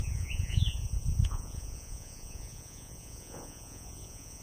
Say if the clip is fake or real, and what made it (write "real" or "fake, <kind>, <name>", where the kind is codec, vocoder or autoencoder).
fake, vocoder, Vocos